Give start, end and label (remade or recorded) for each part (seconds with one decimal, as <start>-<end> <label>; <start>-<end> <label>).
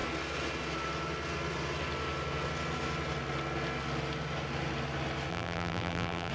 0.0-5.3 recorded; 5.3-6.3 remade